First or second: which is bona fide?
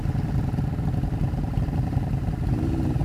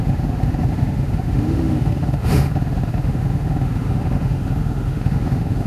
first